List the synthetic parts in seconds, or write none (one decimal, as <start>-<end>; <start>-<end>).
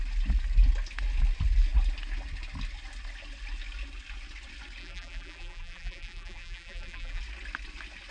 4.8-7.2